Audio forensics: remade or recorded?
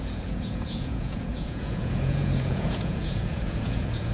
remade